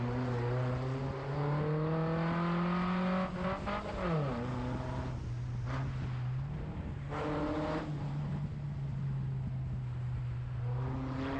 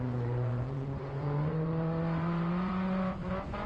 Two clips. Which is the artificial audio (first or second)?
second